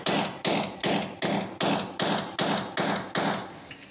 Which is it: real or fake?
real